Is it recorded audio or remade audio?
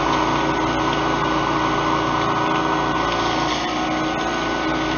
recorded